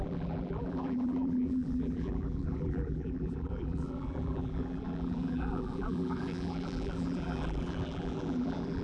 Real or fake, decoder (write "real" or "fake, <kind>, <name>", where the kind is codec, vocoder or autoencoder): fake, vocoder, BigVGAN v2